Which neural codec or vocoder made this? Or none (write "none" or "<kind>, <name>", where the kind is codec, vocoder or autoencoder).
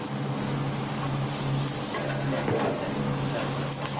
none